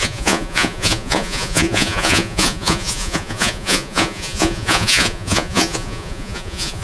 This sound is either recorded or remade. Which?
remade